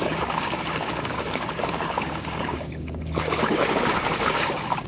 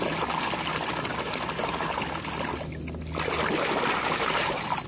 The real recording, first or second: second